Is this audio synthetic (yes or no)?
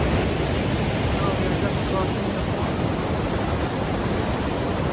no